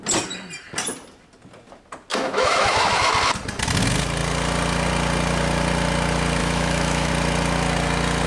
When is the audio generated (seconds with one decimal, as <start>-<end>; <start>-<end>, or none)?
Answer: 2.1-3.1; 6.4-7.1